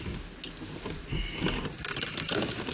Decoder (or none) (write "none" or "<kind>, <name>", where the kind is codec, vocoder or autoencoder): none